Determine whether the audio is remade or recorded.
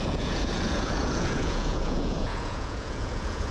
remade